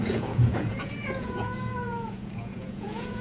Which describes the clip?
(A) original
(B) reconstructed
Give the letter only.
B